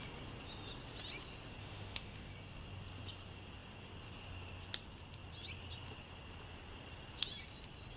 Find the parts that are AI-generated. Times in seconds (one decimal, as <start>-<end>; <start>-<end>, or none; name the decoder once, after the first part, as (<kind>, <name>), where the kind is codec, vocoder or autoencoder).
1.6-2.3 (autoencoder, DAC-VAE)